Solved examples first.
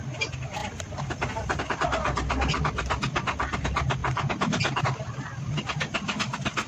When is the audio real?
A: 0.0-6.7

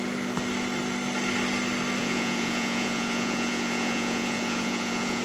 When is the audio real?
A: 0.0-2.0

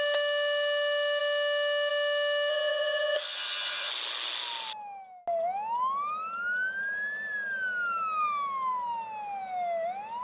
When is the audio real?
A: 0.0-2.5; 3.9-10.2

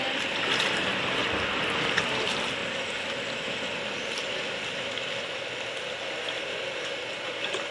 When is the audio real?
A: 0.0-7.7

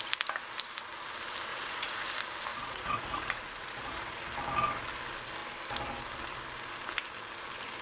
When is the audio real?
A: 0.0-1.5; 2.1-2.5; 4.2-7.8

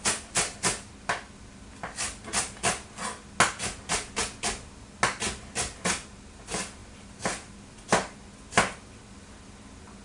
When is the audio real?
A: 0.0-10.0

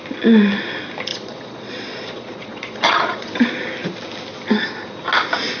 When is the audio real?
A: 0.0-1.1; 3.3-5.6

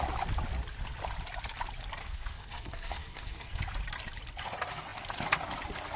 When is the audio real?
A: 0.0-2.0; 3.6-6.0